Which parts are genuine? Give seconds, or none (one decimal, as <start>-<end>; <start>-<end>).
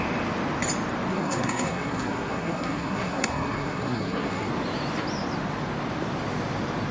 0.0-1.1; 4.5-6.9